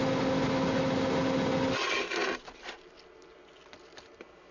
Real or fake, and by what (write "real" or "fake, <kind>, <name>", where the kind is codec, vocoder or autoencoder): real